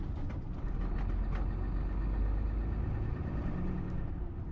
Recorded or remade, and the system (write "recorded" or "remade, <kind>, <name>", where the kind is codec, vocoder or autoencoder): recorded